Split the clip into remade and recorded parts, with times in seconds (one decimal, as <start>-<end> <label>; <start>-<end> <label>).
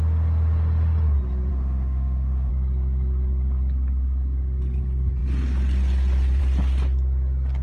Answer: 0.0-1.5 recorded; 1.5-2.5 remade; 2.5-7.6 recorded